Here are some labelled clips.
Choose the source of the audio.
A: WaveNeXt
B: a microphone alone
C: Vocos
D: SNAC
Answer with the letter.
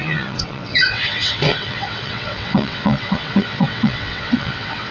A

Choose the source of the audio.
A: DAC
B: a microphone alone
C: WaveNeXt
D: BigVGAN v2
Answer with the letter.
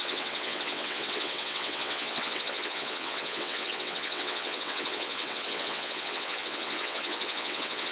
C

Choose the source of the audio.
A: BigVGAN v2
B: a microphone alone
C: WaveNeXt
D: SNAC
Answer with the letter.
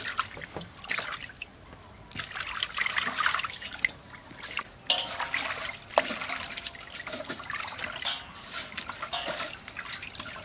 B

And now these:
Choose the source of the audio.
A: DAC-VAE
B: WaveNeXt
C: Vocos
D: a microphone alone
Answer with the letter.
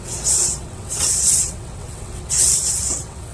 B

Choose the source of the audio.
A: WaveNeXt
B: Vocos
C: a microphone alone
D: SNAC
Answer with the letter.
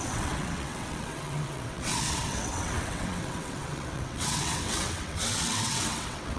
A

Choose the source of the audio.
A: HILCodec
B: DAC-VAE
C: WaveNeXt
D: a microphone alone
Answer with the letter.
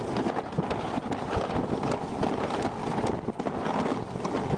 D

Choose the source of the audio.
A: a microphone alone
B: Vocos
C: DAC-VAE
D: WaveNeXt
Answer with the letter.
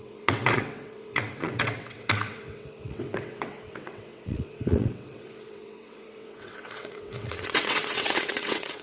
D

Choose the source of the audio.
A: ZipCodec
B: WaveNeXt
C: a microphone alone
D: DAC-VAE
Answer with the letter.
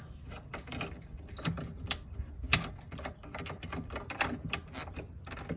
C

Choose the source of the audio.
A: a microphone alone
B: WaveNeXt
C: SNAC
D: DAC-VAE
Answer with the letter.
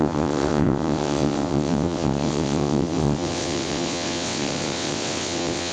B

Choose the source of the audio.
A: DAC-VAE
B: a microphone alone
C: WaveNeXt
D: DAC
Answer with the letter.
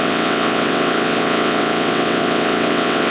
C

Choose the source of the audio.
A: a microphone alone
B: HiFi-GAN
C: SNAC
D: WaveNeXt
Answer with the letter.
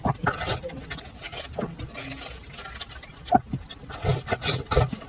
A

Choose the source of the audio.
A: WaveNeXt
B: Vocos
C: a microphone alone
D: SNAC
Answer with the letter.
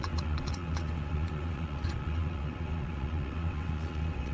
A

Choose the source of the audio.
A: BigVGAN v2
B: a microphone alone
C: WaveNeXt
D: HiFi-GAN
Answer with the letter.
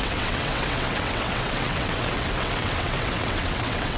C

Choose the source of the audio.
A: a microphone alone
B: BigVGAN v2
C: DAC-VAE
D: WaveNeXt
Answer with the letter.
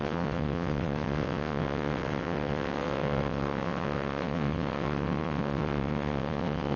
D